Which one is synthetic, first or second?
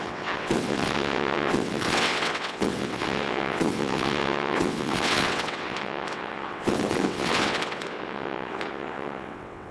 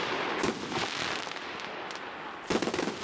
first